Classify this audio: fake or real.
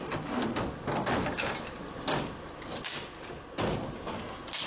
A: real